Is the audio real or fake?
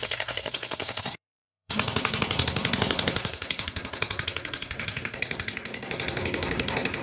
fake